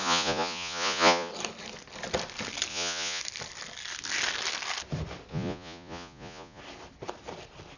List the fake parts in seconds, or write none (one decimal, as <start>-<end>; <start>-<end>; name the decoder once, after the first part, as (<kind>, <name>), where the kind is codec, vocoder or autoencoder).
0.0-1.3 (vocoder, Vocos); 2.7-3.2; 5.3-6.6